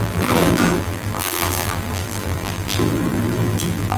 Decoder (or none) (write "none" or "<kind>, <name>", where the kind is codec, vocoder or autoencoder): vocoder, BigVGAN v2